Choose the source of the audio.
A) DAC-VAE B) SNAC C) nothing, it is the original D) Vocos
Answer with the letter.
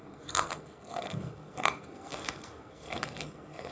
B